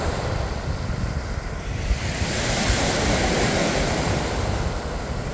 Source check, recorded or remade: recorded